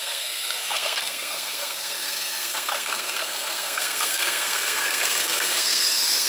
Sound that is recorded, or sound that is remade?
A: remade